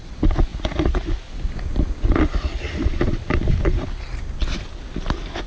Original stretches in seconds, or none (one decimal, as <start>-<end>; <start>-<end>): 0.0-5.5